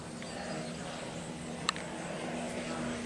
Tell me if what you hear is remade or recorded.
recorded